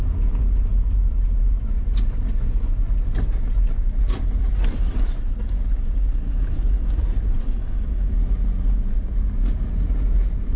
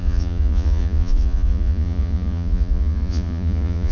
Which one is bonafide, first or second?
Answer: first